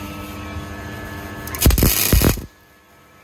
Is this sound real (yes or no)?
yes